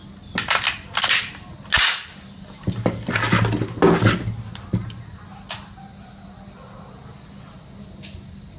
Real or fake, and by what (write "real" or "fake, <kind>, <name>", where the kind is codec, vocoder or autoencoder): real